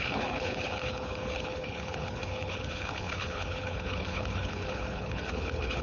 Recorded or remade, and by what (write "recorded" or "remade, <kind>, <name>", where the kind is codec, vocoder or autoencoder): remade, codec, HILCodec